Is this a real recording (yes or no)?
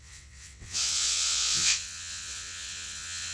no